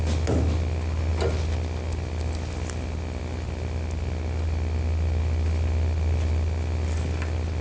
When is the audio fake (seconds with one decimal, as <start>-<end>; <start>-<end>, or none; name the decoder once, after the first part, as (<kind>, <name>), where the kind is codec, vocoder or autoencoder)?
none